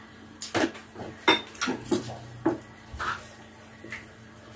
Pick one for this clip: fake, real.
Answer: real